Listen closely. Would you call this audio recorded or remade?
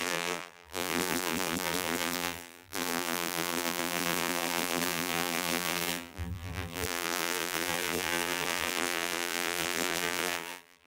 remade